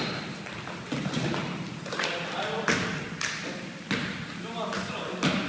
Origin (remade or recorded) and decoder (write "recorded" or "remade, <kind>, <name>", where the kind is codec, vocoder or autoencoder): recorded